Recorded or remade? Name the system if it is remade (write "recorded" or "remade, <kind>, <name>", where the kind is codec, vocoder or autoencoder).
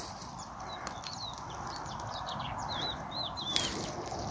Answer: recorded